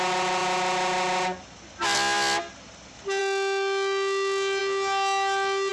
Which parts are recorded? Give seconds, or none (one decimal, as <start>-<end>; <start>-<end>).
0.0-5.7